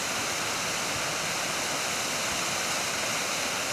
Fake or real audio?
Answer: real